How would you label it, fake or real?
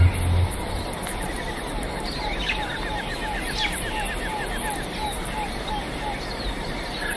real